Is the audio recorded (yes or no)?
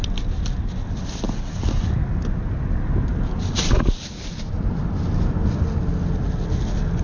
yes